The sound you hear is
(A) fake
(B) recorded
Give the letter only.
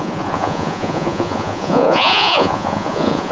A